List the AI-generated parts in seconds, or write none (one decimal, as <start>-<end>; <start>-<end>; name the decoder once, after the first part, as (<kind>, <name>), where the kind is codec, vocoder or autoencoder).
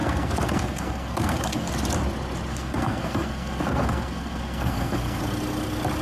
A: 0.0-1.7 (codec, SNAC); 2.5-5.2